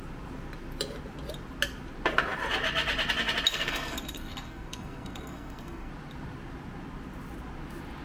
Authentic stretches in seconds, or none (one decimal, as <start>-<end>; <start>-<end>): 0.0-3.5; 5.9-8.0